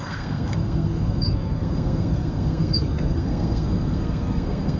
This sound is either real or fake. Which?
fake